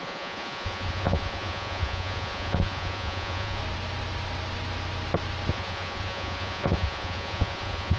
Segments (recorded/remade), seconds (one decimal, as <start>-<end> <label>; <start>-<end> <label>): 0.0-3.6 remade; 3.6-5.5 recorded; 5.5-8.0 remade